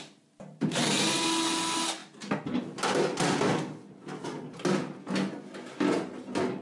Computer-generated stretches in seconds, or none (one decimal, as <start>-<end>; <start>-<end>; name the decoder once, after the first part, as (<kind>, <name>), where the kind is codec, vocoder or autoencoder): none